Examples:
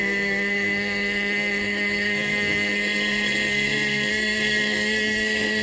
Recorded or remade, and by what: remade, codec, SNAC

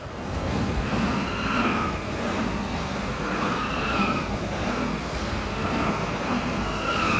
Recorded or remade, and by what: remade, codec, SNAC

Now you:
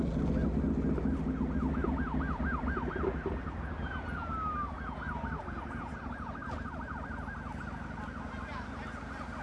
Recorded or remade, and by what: recorded